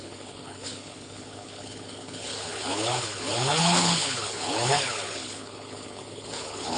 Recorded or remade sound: remade